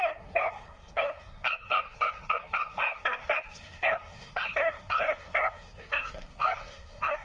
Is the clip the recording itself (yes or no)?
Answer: no